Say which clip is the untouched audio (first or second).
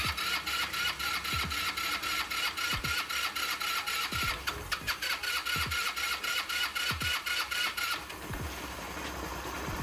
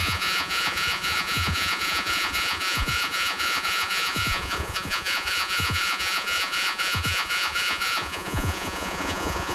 first